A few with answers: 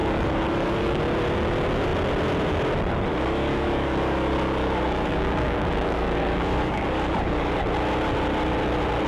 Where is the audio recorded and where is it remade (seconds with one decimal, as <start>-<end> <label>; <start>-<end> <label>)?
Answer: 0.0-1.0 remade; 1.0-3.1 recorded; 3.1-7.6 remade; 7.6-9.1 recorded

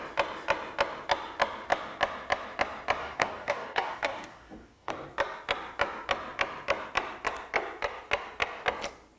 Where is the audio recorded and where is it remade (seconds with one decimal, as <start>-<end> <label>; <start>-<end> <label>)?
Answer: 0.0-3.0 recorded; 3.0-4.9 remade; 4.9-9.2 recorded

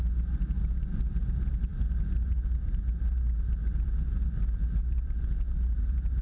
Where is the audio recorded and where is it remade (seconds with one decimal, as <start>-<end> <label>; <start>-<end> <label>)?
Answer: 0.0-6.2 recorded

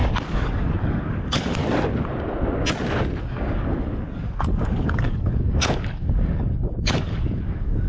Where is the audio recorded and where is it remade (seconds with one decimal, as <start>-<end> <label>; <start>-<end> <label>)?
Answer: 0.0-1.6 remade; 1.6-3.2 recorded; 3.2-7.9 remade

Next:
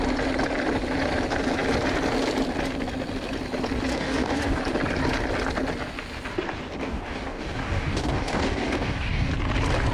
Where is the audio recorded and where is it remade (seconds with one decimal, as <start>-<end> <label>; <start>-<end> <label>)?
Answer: 0.0-3.9 recorded; 3.9-4.6 remade; 4.6-6.8 recorded; 6.8-9.3 remade; 9.3-9.9 recorded

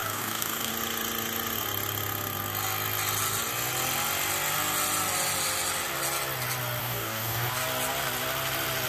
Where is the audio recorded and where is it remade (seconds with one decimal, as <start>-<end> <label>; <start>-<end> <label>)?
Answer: 0.0-0.7 remade; 0.7-6.8 recorded; 6.8-7.5 remade; 7.5-8.9 recorded

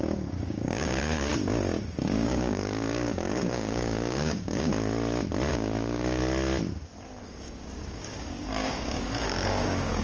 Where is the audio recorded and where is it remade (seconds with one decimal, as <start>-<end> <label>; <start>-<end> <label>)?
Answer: 0.0-1.3 remade; 1.3-2.0 recorded; 2.0-4.7 remade; 4.7-5.5 recorded; 5.5-6.2 remade; 6.2-7.2 recorded; 7.2-10.0 remade